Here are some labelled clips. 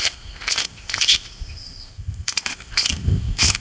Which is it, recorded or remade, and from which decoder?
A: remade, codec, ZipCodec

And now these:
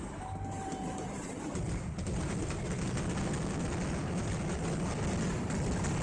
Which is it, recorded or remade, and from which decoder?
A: recorded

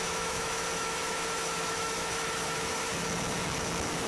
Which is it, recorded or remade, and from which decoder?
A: remade, autoencoder, DAC-VAE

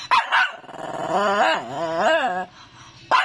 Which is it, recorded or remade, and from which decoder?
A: recorded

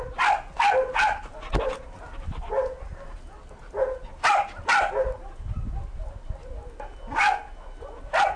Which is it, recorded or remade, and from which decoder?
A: recorded